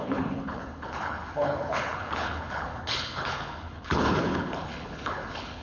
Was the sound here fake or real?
fake